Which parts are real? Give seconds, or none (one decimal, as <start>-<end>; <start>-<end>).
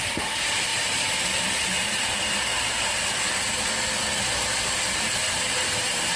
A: 2.5-5.8